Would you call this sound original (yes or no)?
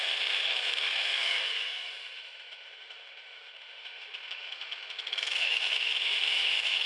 no